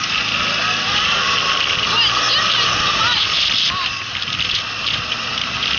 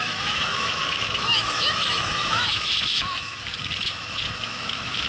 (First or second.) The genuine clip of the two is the first